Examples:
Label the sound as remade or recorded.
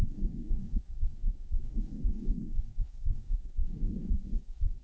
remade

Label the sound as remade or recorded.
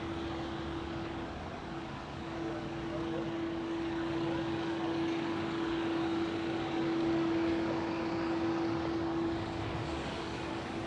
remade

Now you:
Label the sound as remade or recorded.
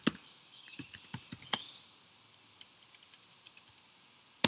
recorded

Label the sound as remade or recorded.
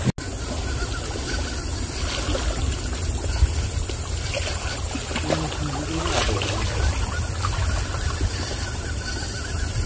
recorded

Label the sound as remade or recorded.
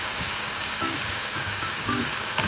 remade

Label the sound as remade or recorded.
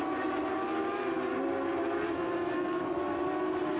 recorded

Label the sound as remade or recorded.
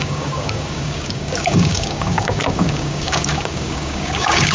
remade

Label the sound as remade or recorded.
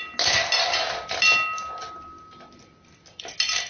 recorded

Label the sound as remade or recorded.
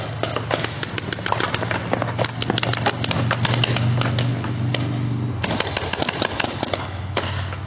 recorded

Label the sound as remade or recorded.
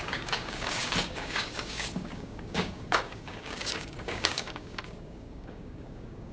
remade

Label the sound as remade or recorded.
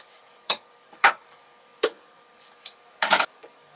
remade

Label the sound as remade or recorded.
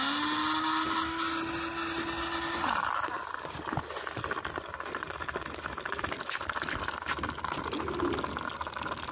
recorded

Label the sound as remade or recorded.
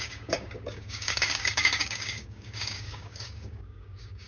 remade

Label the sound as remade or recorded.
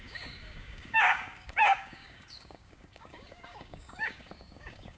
remade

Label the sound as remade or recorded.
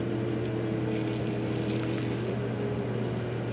recorded